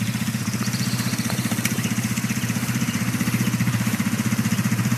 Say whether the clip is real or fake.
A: fake